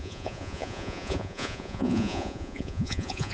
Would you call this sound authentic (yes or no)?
no